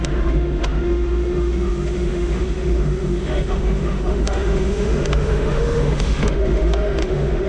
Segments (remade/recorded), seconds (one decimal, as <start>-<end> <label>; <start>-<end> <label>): 0.0-7.5 remade